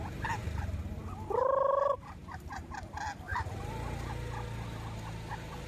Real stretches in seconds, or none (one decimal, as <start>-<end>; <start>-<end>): 0.0-2.2; 2.7-3.3; 4.1-5.7